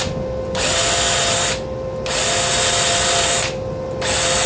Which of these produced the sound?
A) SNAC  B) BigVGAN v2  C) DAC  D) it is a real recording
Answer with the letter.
D